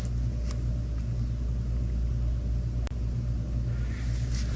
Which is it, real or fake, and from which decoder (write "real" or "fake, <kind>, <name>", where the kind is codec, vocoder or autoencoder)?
real